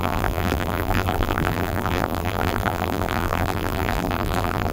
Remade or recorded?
remade